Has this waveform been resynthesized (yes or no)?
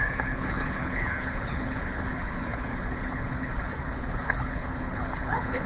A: yes